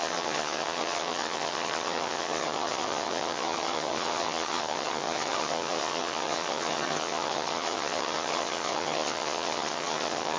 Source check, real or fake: fake